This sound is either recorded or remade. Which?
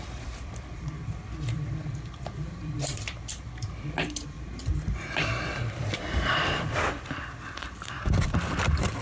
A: remade